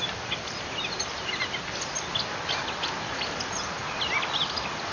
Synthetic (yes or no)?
no